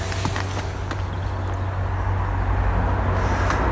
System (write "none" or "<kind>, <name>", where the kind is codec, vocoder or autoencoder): none